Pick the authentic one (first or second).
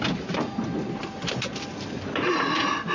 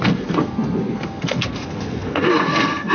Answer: first